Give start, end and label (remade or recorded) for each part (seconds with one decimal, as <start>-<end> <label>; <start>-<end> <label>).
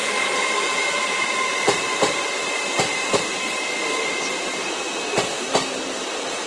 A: 0.0-6.5 recorded